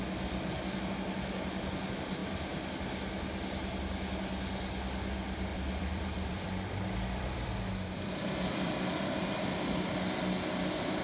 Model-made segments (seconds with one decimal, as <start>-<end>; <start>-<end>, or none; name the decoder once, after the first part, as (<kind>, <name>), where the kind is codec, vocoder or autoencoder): 5.5-9.9 (vocoder, BigVGAN v2)